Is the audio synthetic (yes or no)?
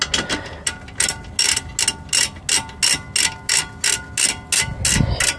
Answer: no